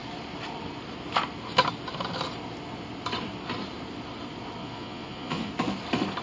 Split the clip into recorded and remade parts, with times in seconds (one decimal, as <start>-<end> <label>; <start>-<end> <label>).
0.0-4.6 recorded; 4.6-5.5 remade; 5.5-6.2 recorded

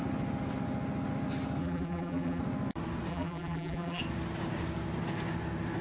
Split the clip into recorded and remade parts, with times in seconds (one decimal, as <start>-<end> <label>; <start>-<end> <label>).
0.0-1.6 recorded; 1.6-2.4 remade; 2.4-3.1 recorded; 3.1-4.0 remade; 4.0-5.8 recorded

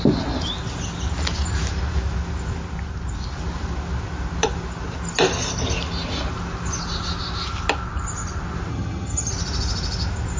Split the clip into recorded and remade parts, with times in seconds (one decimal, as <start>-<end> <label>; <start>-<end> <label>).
0.0-8.7 recorded; 8.7-9.3 remade; 9.3-10.4 recorded

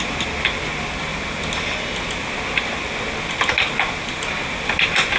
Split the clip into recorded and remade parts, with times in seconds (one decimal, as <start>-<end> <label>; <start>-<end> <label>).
0.0-5.2 recorded

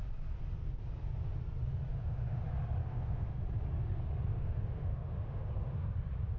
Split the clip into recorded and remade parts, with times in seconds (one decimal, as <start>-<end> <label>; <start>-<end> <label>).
0.0-1.9 recorded; 1.9-2.4 remade; 2.4-2.8 recorded; 2.8-3.4 remade; 3.4-4.3 recorded; 4.3-5.5 remade; 5.5-6.4 recorded